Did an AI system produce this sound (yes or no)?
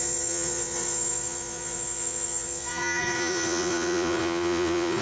yes